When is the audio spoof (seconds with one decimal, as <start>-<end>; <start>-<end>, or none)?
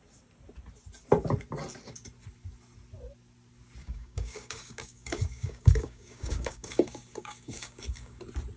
3.8-8.2